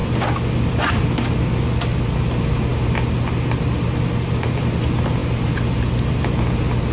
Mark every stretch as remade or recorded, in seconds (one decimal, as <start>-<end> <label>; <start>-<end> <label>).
0.0-6.9 recorded